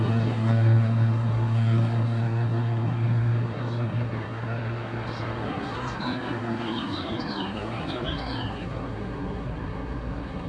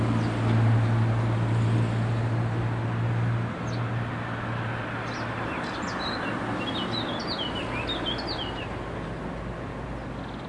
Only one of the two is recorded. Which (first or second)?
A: second